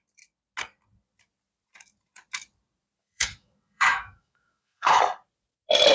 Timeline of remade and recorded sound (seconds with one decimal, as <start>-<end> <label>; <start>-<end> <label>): 0.0-3.0 recorded; 3.0-5.0 remade; 5.0-5.9 recorded